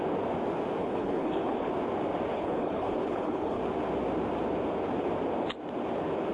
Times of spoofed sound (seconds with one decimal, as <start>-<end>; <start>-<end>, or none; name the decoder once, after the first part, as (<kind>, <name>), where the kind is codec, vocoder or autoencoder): 0.8-1.7 (codec, HILCodec); 2.3-3.6